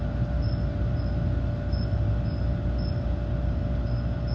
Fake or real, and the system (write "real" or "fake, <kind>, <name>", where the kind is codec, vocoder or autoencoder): real